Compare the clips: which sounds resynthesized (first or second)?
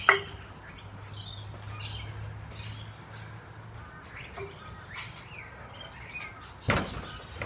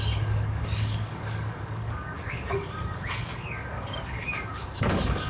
second